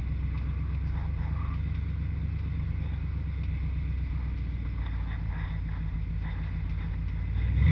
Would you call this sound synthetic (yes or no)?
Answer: no